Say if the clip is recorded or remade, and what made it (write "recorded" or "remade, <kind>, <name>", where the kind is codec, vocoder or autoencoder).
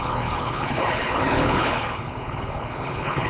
remade, codec, HILCodec